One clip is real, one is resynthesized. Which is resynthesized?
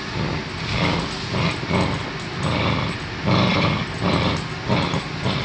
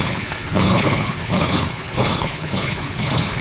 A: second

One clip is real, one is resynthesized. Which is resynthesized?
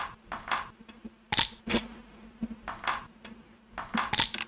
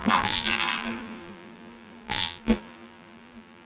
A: second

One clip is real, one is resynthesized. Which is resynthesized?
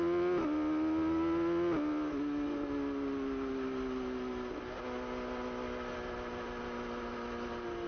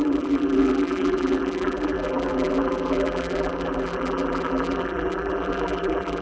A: second